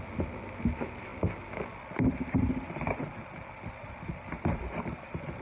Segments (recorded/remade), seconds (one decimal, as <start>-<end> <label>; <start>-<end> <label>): 0.0-5.4 recorded